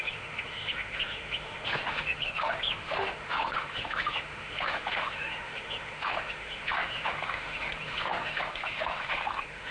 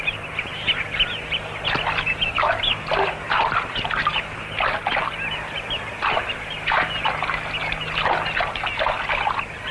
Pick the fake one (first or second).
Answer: first